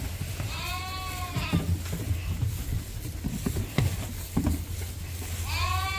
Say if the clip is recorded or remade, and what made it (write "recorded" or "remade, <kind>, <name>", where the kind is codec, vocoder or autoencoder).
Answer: recorded